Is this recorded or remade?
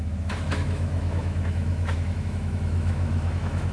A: remade